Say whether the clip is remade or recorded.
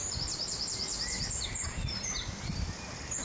recorded